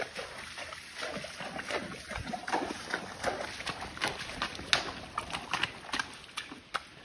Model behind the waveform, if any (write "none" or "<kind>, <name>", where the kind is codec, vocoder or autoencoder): none